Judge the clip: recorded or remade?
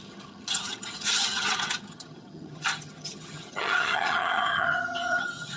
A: remade